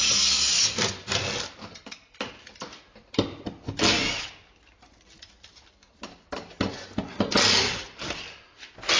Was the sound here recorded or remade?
recorded